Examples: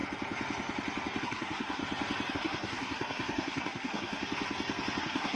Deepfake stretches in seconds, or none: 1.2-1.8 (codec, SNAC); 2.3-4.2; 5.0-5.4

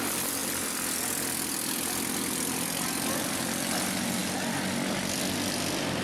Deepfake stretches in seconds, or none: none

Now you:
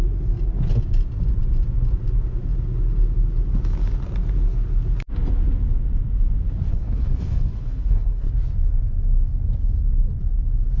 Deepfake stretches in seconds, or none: 6.7-8.3 (codec, HILCodec)